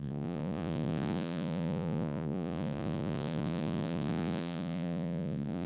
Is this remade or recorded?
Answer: remade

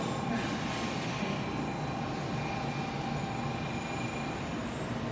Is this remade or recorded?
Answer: recorded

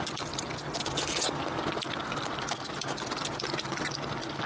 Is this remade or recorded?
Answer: recorded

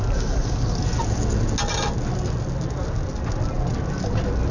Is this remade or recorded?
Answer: recorded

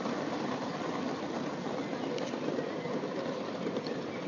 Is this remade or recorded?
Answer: recorded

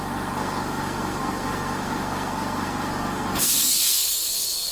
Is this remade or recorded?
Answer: remade